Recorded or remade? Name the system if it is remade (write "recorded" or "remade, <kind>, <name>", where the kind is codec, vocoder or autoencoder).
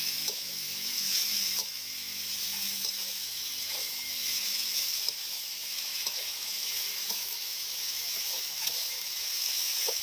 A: remade, autoencoder, DAC-VAE